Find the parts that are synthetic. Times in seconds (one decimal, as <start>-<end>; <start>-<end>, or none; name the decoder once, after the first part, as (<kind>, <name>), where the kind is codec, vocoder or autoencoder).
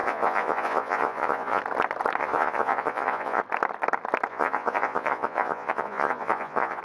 0.0-1.6 (vocoder, Vocos); 2.2-3.4; 4.3-6.8